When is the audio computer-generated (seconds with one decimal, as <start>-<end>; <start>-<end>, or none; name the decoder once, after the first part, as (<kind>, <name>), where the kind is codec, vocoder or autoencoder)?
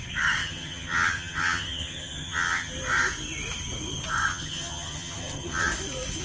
0.4-2.7 (vocoder, HiFi-GAN); 4.3-5.7